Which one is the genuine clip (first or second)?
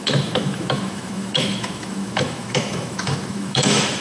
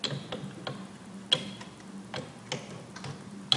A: second